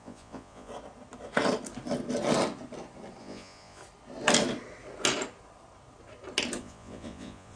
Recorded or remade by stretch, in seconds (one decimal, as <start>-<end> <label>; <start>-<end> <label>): 0.0-0.7 remade; 0.7-3.2 recorded; 3.2-3.8 remade; 3.8-6.6 recorded; 6.6-7.6 remade